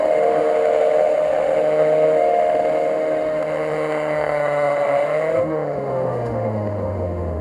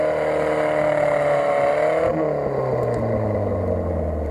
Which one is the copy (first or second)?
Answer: first